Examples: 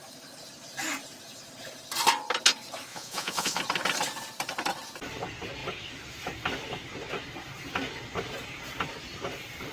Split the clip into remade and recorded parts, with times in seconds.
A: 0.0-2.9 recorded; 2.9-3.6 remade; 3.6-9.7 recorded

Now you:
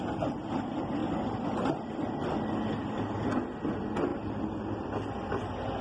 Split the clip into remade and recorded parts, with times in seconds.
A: 0.0-5.8 recorded

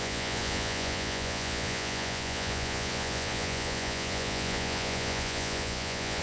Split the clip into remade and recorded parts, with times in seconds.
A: 0.0-6.2 remade

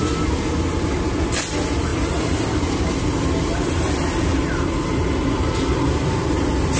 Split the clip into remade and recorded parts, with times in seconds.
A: 0.0-6.8 recorded

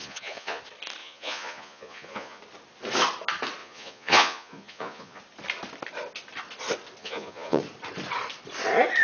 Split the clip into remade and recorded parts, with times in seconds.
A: 0.0-0.6 remade; 0.6-1.0 recorded; 1.0-2.4 remade; 2.4-3.6 recorded; 3.6-5.2 remade; 5.2-7.0 recorded; 7.0-7.6 remade; 7.6-9.0 recorded

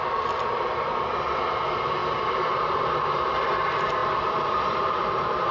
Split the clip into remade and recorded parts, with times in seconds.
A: 0.0-5.5 recorded

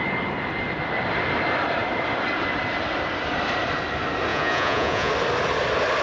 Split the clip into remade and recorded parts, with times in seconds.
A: 0.0-4.3 recorded; 4.3-5.1 remade; 5.1-6.0 recorded

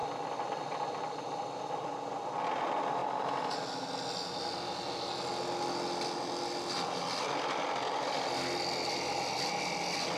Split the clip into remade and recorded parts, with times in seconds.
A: 0.0-10.2 recorded